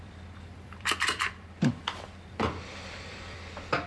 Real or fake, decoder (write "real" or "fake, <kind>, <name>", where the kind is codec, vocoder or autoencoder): fake, vocoder, BigVGAN v2